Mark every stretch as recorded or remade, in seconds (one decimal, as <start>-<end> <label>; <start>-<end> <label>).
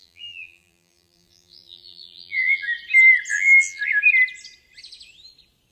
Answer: 0.0-2.7 remade; 2.7-3.3 recorded; 3.3-3.8 remade; 3.8-5.7 recorded